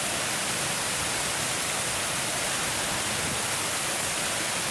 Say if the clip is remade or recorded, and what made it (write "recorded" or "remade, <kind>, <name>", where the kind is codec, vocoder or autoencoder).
recorded